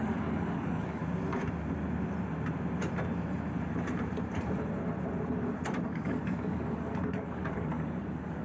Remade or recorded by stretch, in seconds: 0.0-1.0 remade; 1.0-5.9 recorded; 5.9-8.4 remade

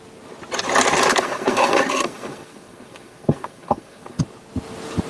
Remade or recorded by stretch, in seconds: 0.0-1.1 recorded; 1.1-4.2 remade; 4.2-5.1 recorded

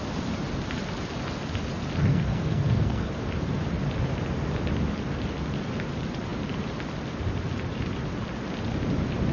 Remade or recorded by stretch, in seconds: 0.0-2.1 recorded; 2.1-3.1 remade; 3.1-9.3 recorded

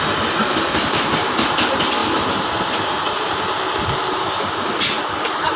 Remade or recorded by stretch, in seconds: 0.0-0.4 recorded; 0.4-1.1 remade; 1.1-2.0 recorded; 2.0-5.6 remade

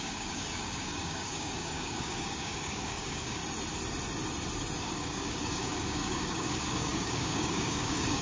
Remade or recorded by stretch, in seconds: 0.0-3.4 remade; 3.4-4.8 recorded; 4.8-8.2 remade

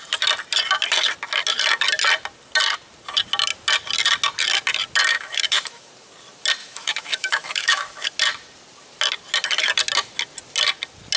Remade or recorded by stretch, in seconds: 0.0-5.1 recorded; 5.1-5.9 remade; 5.9-6.6 recorded; 6.6-8.1 remade; 8.1-11.2 recorded